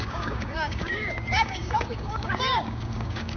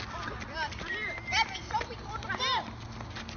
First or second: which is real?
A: second